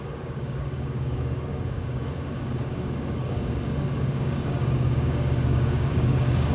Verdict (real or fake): fake